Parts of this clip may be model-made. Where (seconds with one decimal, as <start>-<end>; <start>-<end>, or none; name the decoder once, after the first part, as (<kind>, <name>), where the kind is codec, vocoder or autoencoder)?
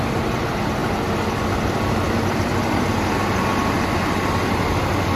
0.8-2.9 (vocoder, BigVGAN v2)